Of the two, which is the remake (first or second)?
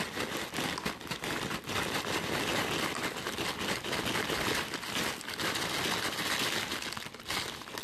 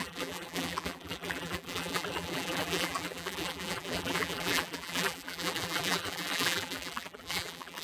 second